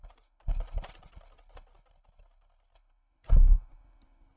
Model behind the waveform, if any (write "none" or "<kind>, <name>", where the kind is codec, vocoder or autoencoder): none